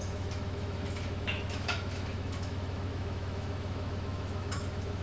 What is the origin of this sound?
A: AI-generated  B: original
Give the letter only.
A